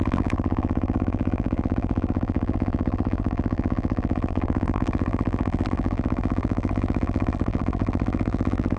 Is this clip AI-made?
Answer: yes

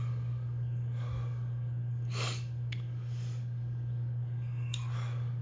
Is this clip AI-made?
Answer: yes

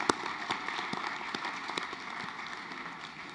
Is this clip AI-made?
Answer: no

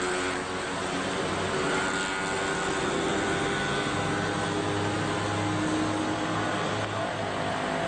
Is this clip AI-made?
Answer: no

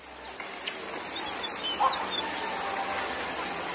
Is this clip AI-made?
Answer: no